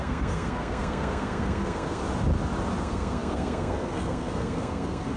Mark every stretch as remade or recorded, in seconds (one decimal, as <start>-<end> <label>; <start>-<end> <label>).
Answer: 0.0-2.0 remade; 2.0-2.8 recorded; 2.8-5.2 remade